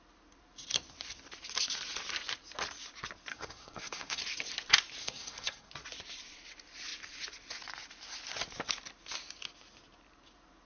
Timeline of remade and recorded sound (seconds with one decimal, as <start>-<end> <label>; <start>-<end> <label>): 0.0-3.3 recorded; 3.3-4.2 remade; 4.2-5.0 recorded; 5.0-5.7 remade; 5.7-10.7 recorded